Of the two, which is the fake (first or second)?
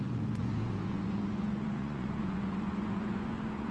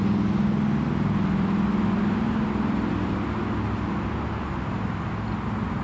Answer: first